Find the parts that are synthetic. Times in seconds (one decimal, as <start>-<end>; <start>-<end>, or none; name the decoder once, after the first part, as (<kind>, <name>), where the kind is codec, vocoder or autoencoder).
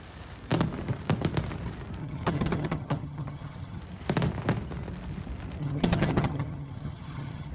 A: 2.0-3.8 (vocoder, HiFi-GAN); 5.6-7.5